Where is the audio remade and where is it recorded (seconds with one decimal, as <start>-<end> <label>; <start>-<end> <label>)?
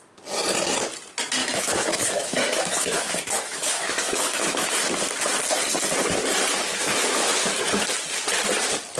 0.0-1.4 recorded; 1.4-4.8 remade; 4.8-6.7 recorded; 6.7-7.3 remade; 7.3-9.0 recorded